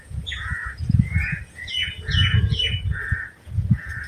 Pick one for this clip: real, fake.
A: fake